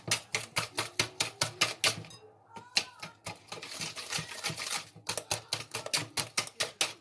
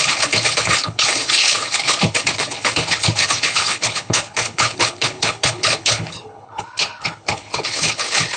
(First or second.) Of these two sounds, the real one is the first